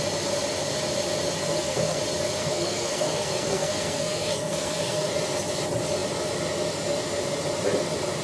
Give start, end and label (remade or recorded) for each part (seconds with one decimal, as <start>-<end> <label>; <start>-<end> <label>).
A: 0.0-1.4 recorded; 1.4-2.0 remade; 2.0-2.4 recorded; 2.4-5.1 remade; 5.1-8.2 recorded